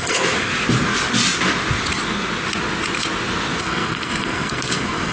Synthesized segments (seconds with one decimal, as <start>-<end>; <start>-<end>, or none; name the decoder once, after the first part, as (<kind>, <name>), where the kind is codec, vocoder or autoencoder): 0.0-0.5 (codec, SNAC); 3.6-5.1